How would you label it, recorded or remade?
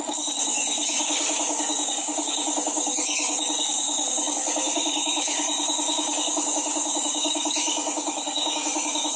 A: remade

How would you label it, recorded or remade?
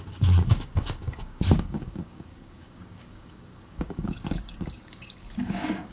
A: remade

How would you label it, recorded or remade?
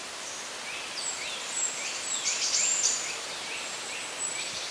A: recorded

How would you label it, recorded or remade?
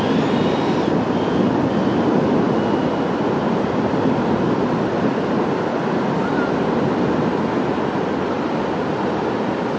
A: recorded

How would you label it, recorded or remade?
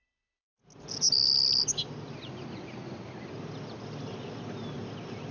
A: recorded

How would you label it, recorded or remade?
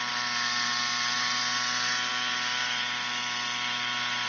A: recorded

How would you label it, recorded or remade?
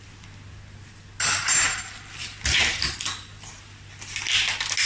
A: recorded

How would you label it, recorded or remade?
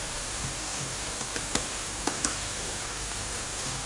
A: remade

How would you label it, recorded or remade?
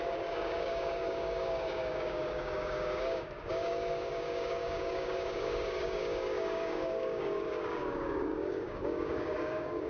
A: remade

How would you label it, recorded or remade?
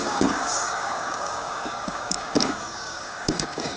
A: remade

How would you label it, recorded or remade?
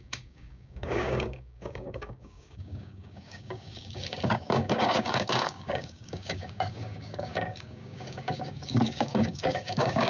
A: remade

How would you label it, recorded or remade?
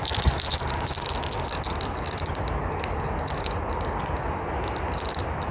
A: recorded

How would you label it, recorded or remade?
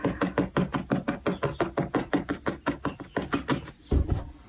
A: recorded